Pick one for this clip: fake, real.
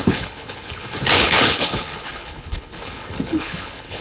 fake